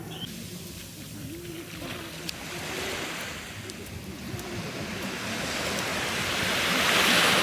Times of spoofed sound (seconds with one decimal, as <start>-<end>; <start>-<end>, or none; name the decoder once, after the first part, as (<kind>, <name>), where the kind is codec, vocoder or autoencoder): none